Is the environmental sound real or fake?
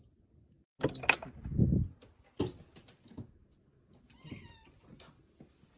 real